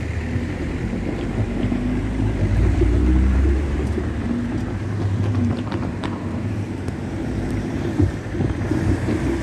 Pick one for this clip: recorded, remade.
remade